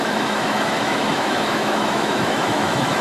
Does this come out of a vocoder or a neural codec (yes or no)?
yes